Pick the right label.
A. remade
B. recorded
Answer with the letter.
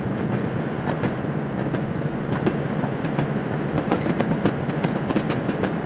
A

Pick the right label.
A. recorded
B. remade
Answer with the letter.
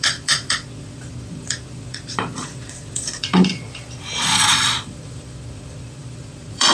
B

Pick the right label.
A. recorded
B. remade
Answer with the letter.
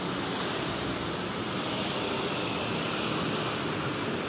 A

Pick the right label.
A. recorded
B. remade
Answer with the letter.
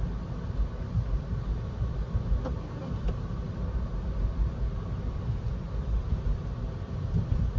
A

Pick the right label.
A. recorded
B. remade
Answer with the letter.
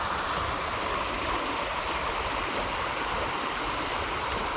A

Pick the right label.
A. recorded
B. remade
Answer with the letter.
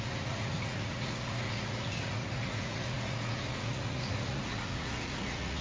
B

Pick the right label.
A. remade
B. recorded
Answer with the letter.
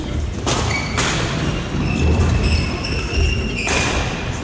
B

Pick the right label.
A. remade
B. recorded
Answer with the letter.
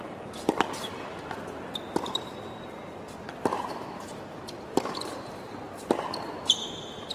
B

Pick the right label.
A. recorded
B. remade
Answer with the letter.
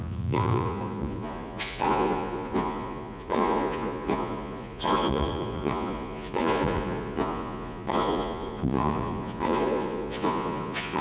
B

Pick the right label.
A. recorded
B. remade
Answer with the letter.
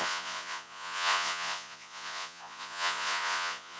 B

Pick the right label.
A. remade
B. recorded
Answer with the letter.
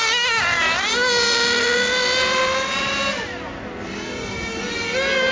B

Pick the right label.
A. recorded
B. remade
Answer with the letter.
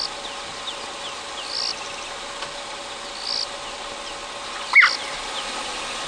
A